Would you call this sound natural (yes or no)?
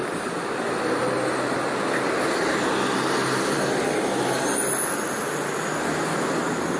yes